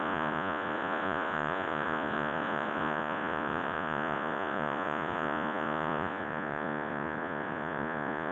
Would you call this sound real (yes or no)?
no